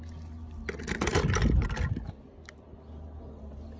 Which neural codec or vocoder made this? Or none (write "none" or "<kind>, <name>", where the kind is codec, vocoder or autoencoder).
none